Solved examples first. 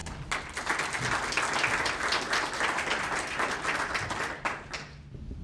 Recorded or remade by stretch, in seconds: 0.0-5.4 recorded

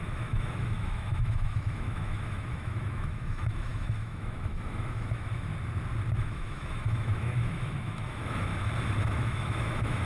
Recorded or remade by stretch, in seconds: 0.0-5.5 remade; 5.5-6.2 recorded; 6.2-8.5 remade; 8.5-9.1 recorded; 9.1-10.1 remade

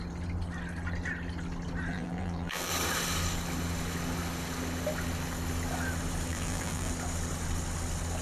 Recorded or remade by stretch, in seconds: 0.0-1.9 recorded; 1.9-2.7 remade; 2.7-6.3 recorded; 6.3-6.9 remade; 6.9-8.2 recorded

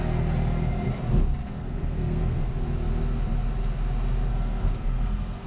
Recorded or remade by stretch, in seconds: 0.0-1.4 recorded; 1.4-2.5 remade; 2.5-4.3 recorded; 4.3-5.5 remade